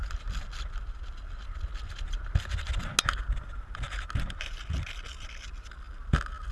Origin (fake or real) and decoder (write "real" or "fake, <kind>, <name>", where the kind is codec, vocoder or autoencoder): real